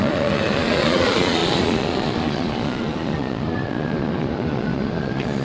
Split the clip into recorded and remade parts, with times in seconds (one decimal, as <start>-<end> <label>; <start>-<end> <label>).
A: 0.0-5.4 remade